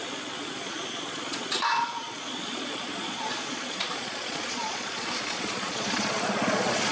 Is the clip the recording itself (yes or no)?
no